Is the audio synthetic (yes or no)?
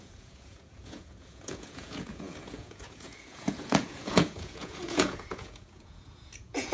yes